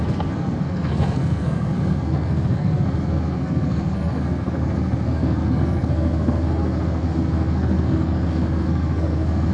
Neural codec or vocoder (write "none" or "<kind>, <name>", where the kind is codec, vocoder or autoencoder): codec, SNAC